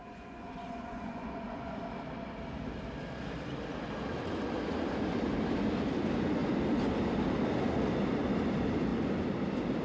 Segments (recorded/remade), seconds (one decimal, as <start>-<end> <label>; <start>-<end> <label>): 0.0-1.8 remade; 1.8-9.8 recorded